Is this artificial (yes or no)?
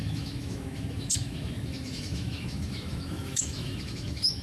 yes